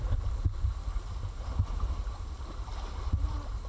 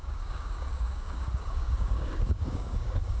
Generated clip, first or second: second